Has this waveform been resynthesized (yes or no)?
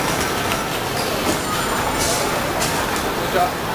no